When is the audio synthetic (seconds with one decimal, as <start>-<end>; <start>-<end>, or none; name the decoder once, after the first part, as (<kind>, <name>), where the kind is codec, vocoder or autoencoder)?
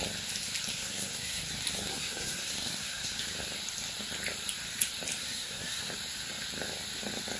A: 0.7-1.4 (codec, SNAC); 1.9-3.2; 5.2-5.9